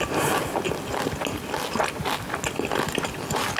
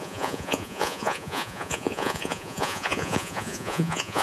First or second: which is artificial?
second